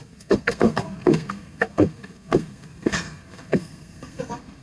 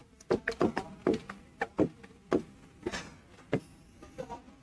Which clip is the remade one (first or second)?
first